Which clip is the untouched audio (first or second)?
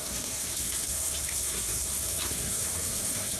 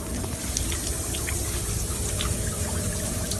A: second